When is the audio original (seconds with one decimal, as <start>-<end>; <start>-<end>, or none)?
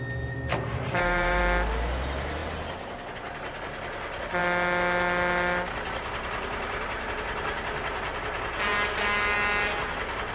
0.0-0.5; 1.4-2.4; 3.1-10.3